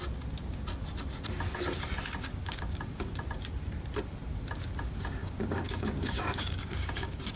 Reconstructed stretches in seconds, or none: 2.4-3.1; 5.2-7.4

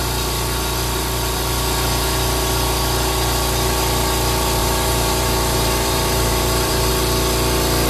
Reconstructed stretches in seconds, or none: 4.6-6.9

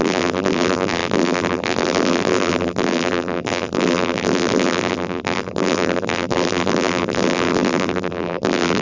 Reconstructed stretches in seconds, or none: 0.0-8.8